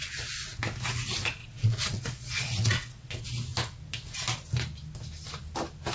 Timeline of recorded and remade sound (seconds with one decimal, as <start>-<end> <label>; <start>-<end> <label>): 0.0-1.4 recorded; 1.4-3.1 remade; 3.1-5.9 recorded

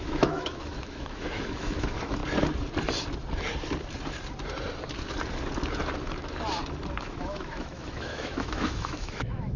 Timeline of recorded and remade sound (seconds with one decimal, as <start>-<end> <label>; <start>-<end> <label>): 0.0-2.2 remade; 2.2-7.0 recorded; 7.0-9.6 remade

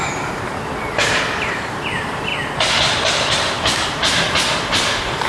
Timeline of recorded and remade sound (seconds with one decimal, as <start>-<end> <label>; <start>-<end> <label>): 0.0-2.3 remade; 2.3-2.9 recorded; 2.9-5.3 remade